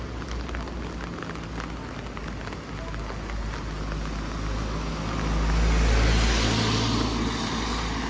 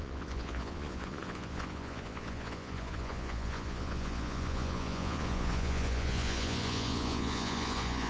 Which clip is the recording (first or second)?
first